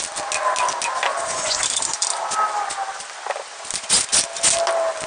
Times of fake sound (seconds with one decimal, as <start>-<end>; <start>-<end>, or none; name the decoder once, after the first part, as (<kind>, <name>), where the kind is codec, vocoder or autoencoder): 1.1-1.6 (vocoder, Vocos)